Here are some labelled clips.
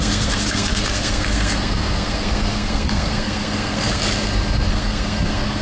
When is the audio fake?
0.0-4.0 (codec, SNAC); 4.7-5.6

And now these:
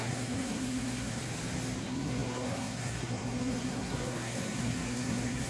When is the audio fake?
0.0-1.2 (codec, SNAC); 1.8-5.5

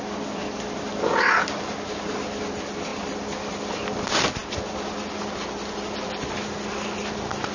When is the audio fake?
none

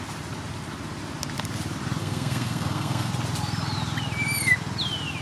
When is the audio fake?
2.0-3.1 (codec, SNAC)

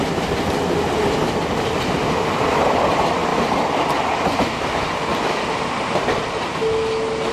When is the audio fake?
none

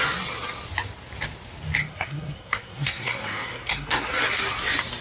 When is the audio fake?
1.8-4.1 (codec, SNAC)

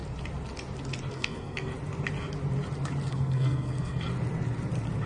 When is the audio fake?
1.1-1.7 (codec, SNAC); 3.1-4.1